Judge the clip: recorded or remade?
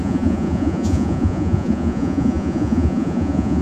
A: remade